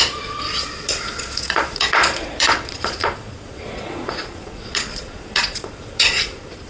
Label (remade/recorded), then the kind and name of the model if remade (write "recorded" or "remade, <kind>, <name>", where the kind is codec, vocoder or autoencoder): remade, vocoder, Vocos